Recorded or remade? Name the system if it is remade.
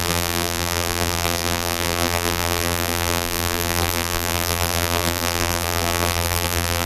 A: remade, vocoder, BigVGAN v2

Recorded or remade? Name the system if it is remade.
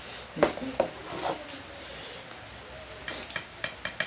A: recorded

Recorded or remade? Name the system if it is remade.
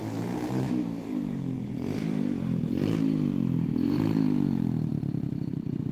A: remade, vocoder, BigVGAN v2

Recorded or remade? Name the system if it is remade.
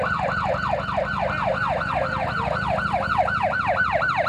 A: recorded